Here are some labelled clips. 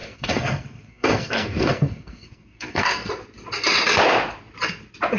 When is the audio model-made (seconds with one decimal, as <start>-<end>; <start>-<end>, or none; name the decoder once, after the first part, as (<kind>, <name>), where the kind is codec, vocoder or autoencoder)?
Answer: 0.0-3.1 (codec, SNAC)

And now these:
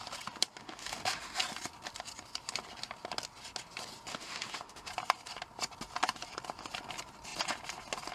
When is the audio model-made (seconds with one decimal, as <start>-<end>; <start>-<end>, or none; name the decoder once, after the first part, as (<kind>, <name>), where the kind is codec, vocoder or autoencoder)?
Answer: 0.6-1.4 (autoencoder, DAC-VAE); 4.1-4.9

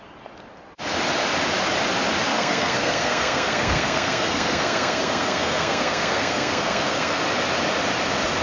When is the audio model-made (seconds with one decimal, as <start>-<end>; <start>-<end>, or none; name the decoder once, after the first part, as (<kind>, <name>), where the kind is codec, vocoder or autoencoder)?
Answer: 2.3-7.2 (codec, SNAC)